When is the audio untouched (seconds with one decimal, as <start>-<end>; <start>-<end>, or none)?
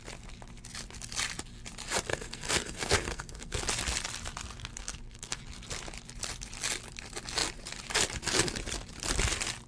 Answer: 0.0-2.1; 3.6-4.7; 5.4-9.7